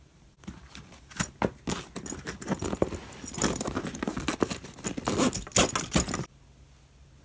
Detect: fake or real real